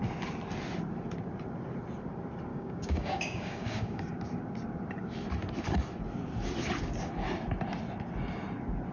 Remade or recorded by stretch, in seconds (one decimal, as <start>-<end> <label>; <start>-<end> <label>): 0.0-2.5 recorded; 2.5-4.1 remade; 4.1-8.9 recorded

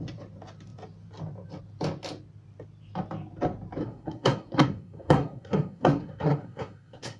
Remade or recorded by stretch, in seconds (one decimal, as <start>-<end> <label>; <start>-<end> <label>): 0.0-3.8 recorded; 3.8-7.2 remade